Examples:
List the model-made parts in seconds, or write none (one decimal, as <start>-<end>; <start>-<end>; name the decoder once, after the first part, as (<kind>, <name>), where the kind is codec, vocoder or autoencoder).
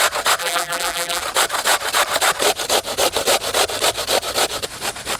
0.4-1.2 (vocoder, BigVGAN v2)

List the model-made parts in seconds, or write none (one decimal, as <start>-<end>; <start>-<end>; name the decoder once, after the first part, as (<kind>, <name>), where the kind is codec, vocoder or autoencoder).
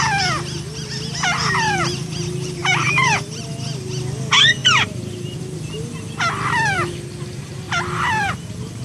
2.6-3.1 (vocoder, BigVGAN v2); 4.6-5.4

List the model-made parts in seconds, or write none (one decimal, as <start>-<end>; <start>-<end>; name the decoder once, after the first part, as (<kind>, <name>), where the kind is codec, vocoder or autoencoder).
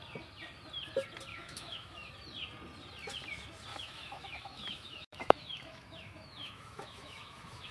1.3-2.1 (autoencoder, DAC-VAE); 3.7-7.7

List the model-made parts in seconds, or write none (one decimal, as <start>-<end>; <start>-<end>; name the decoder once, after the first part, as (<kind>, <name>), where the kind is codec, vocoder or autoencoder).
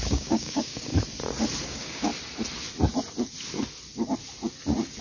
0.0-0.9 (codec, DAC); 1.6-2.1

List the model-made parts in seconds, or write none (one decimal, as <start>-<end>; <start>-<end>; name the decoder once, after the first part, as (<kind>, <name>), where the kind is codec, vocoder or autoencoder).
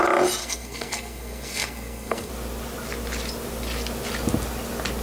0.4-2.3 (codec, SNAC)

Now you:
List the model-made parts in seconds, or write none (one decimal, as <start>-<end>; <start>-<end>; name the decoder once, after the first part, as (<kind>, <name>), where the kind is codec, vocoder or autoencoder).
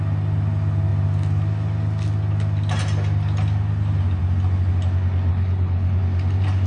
5.3-6.0 (codec, HILCodec)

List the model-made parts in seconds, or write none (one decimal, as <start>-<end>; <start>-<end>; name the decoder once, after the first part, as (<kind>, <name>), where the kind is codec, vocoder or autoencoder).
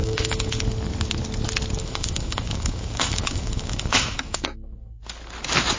0.0-0.6 (autoencoder, DAC-VAE); 1.8-5.0